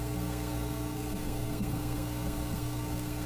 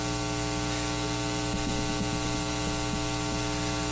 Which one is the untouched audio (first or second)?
second